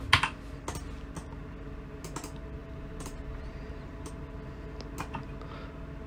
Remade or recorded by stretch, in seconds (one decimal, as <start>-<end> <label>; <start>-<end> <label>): 0.0-2.6 recorded; 2.6-4.1 remade; 4.1-6.1 recorded

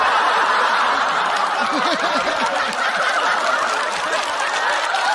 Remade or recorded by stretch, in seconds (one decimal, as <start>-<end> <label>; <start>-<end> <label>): 0.0-5.1 recorded

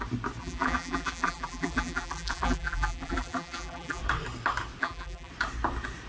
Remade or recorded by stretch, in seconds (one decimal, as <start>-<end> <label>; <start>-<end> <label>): 0.0-0.4 recorded; 0.4-4.0 remade; 4.0-4.8 recorded; 4.8-5.3 remade; 5.3-6.1 recorded

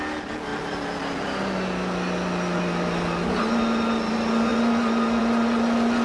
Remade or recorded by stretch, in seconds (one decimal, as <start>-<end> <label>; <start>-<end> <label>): 0.0-6.0 recorded